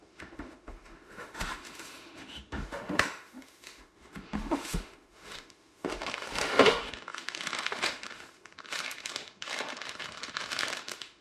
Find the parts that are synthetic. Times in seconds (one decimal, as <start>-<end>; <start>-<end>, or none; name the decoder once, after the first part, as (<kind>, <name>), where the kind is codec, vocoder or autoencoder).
0.0-11.2 (autoencoder, DAC-VAE)